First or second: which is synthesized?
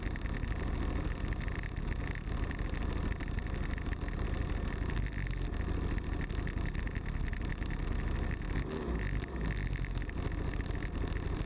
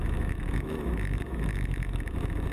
second